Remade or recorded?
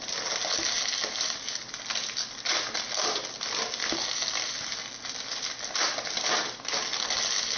recorded